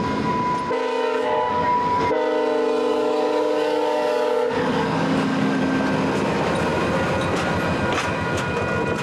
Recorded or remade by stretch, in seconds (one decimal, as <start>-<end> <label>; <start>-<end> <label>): 0.0-0.9 recorded; 0.9-2.0 remade; 2.0-2.9 recorded; 2.9-5.6 remade; 5.6-9.0 recorded